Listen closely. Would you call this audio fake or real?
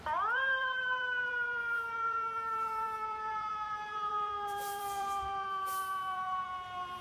fake